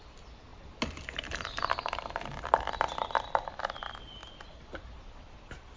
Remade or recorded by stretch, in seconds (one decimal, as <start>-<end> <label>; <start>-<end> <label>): 0.0-5.8 recorded